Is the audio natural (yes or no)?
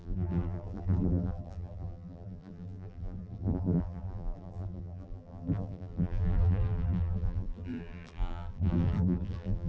no